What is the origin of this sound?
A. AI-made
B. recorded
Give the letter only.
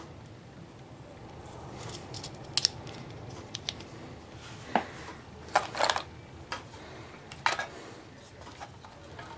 B